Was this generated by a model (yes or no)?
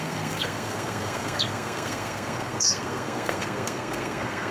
yes